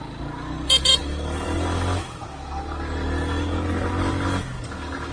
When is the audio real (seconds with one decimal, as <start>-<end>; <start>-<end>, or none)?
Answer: 0.0-5.1